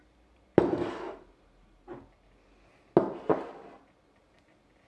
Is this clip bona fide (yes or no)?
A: yes